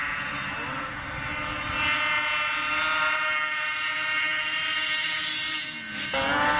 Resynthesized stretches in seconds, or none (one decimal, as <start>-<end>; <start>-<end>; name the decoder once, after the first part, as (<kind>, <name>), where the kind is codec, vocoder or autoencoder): none